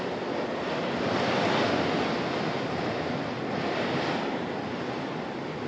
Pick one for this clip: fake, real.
real